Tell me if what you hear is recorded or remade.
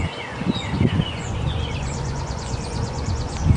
remade